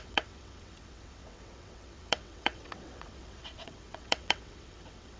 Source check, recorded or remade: remade